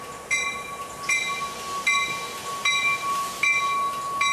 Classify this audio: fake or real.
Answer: real